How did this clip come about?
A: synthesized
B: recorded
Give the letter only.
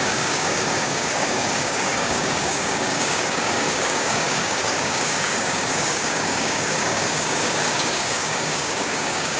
A